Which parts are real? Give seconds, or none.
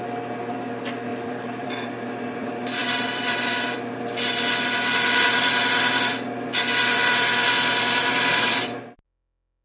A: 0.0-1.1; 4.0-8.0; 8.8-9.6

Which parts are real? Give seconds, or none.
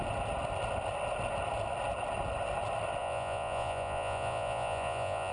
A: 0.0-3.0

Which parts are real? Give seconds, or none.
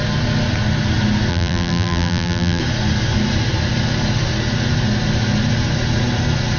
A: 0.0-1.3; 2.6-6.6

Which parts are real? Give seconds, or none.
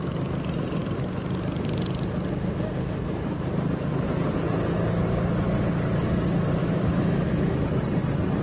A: 0.0-6.6; 7.7-8.4